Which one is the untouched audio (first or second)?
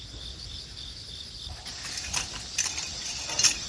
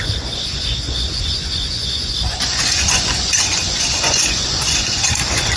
first